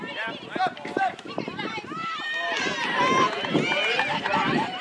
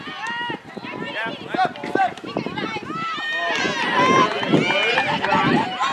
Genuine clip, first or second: second